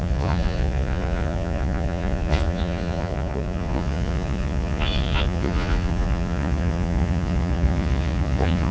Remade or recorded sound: remade